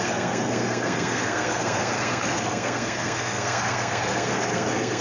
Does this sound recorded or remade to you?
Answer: remade